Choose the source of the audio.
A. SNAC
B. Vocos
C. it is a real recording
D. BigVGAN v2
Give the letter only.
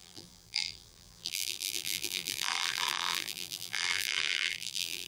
D